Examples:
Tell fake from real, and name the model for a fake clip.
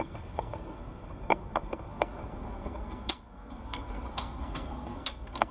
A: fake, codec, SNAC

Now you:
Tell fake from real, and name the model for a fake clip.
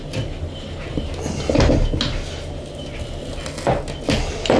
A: real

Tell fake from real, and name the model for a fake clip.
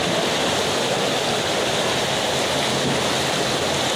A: real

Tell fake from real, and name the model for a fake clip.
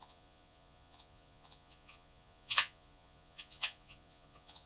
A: fake, vocoder, Vocos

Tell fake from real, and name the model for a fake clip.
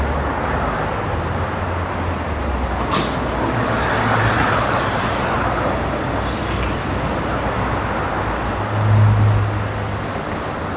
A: real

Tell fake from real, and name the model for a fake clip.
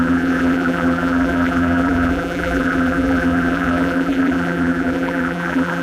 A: fake, vocoder, BigVGAN v2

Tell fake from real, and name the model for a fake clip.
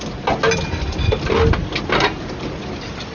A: real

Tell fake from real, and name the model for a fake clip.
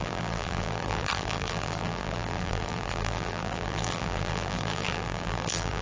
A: fake, vocoder, BigVGAN v2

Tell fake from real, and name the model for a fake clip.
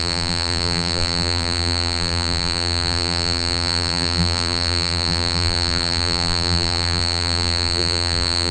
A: fake, vocoder, BigVGAN v2